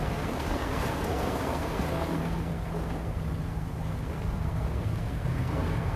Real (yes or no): no